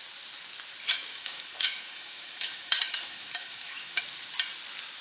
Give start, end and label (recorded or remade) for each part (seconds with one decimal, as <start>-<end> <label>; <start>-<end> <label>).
0.0-1.1 recorded; 1.1-4.0 remade; 4.0-5.0 recorded